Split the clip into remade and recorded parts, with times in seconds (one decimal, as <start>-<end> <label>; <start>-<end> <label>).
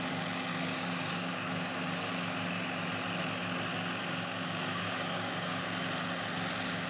0.0-0.5 recorded; 0.5-2.1 remade; 2.1-3.7 recorded; 3.7-5.6 remade; 5.6-6.9 recorded